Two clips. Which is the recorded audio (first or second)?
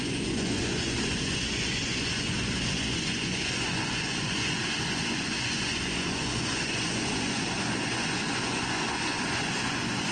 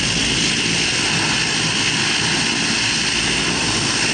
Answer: second